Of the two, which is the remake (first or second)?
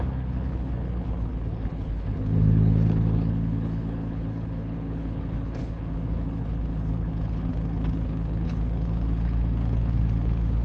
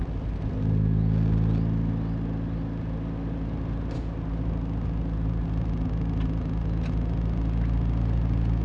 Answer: first